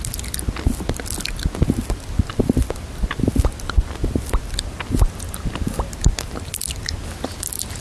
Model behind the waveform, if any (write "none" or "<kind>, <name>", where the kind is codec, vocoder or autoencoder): none